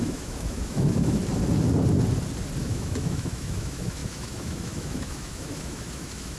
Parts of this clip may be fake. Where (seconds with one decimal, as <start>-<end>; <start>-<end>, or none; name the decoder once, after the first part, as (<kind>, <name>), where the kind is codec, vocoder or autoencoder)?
0.0-1.2 (autoencoder, DAC-VAE); 2.6-6.4